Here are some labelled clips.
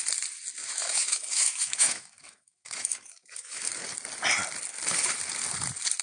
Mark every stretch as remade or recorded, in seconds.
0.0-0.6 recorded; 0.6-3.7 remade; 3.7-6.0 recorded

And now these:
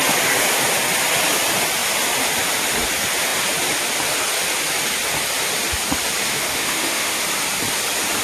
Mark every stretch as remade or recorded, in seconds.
0.0-6.3 recorded; 6.3-7.2 remade; 7.2-8.2 recorded